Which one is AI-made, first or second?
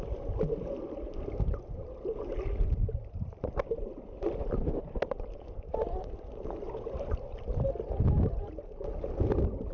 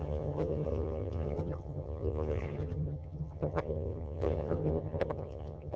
second